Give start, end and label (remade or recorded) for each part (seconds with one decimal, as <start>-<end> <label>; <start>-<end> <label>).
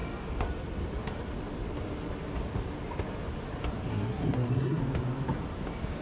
0.0-3.9 recorded; 3.9-4.8 remade; 4.8-6.0 recorded